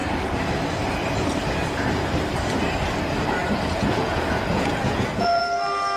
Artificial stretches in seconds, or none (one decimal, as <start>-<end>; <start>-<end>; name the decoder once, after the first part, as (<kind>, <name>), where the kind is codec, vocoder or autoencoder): 3.4-5.4 (vocoder, Vocos)